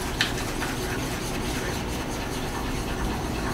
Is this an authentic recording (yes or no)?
yes